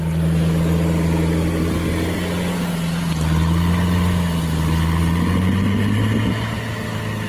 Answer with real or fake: real